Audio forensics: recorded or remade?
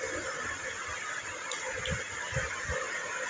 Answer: recorded